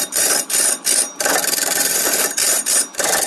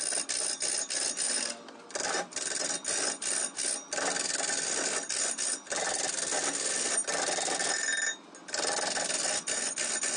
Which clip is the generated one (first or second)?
first